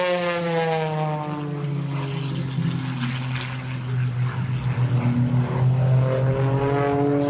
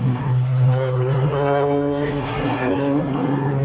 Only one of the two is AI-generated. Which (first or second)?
second